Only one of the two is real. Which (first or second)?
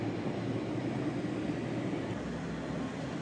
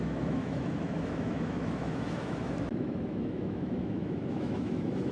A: first